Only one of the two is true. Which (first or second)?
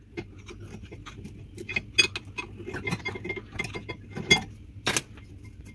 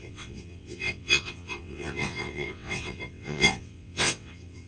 first